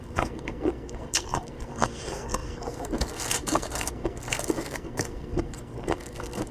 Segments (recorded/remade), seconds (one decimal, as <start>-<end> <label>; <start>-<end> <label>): 0.0-6.5 remade